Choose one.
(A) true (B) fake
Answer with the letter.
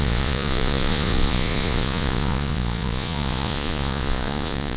B